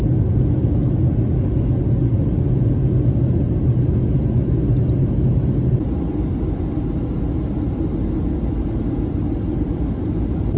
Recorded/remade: recorded